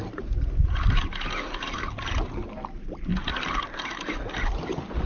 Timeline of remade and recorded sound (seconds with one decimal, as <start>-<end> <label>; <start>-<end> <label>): 0.0-5.1 recorded